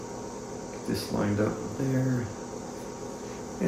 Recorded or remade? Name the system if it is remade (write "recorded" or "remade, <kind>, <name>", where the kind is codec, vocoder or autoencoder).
recorded